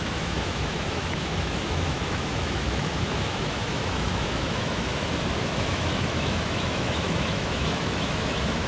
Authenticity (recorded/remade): remade